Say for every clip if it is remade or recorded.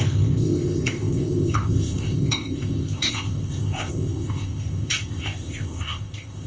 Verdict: remade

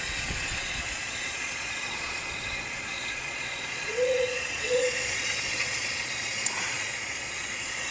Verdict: remade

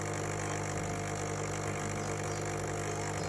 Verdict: recorded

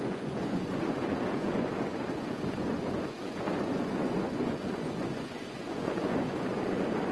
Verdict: remade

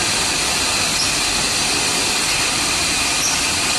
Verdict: recorded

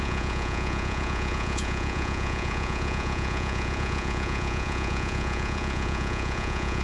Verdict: remade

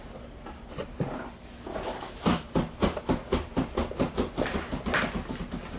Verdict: recorded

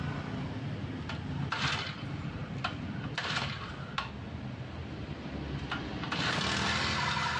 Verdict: recorded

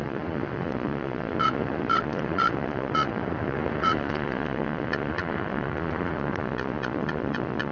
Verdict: remade